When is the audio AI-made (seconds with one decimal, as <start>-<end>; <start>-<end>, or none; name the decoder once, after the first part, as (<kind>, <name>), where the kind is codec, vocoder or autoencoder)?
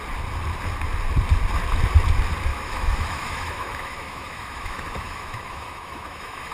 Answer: 2.5-6.5 (autoencoder, DAC-VAE)